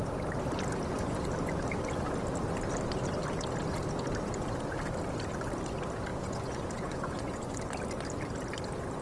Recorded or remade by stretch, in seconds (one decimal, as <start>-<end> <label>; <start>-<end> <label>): 0.0-6.1 recorded; 6.1-7.6 remade; 7.6-9.0 recorded